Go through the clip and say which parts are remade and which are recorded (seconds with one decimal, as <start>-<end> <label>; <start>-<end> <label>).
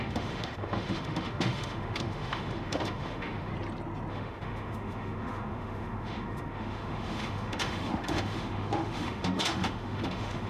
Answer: 0.0-3.5 remade; 3.5-4.1 recorded; 4.1-10.5 remade